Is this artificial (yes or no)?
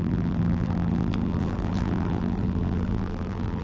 yes